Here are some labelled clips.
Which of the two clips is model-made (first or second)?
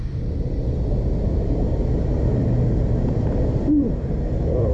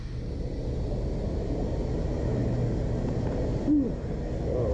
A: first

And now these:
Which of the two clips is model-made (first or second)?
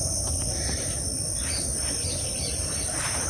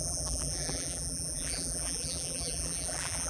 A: second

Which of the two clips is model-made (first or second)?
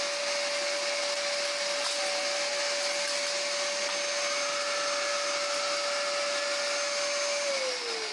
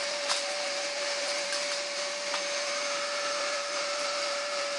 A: second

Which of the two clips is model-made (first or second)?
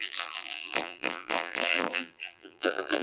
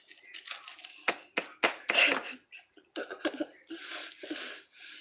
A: first